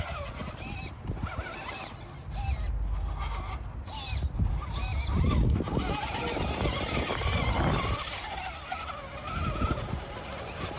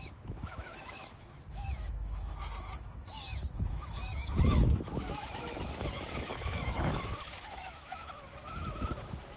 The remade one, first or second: second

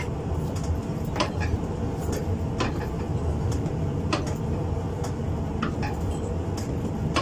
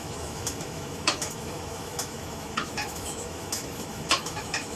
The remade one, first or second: second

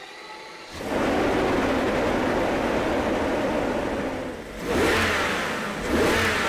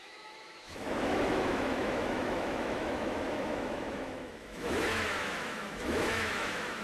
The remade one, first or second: second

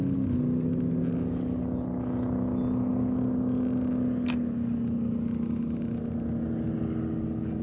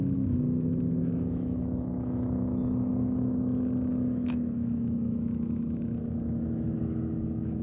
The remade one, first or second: second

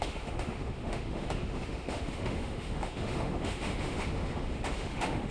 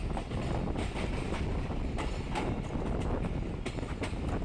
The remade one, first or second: first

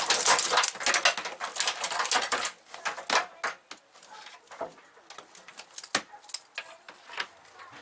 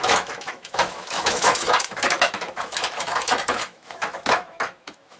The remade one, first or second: second